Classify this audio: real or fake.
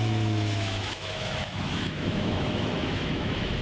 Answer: fake